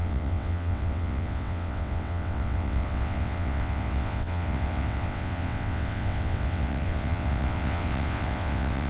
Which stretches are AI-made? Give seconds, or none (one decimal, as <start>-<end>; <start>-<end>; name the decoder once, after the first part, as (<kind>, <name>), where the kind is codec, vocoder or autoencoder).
0.0-8.9 (vocoder, WaveNeXt)